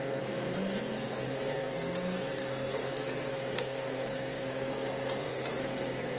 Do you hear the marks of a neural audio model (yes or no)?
yes